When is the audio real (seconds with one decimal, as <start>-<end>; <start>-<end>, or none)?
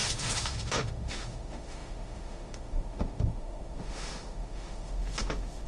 none